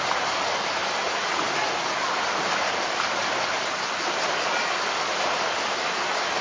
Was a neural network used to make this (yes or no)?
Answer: no